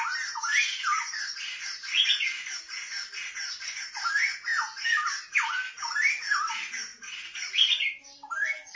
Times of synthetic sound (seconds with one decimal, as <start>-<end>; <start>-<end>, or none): none

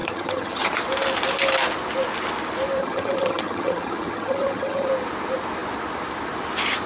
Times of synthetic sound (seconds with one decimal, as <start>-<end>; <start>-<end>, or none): 0.0-0.7; 2.8-4.9

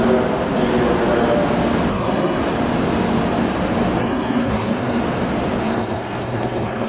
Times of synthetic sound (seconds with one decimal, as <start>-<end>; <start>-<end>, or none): 1.9-2.4; 4.0-5.0; 5.6-6.9

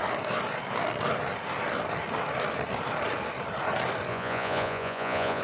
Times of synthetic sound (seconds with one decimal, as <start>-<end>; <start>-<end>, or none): 4.1-5.4

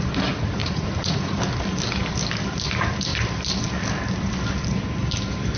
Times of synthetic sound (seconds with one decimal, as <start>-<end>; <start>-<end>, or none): 0.6-1.4

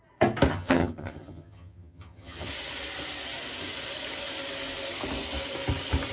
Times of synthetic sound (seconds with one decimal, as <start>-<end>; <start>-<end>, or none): 0.5-2.5

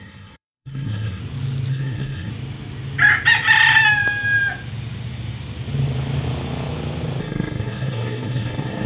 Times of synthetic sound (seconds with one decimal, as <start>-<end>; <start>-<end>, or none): 0.0-1.2; 1.7-2.3; 7.2-8.9